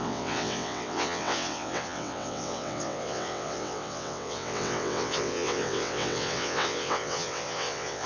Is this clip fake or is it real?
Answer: fake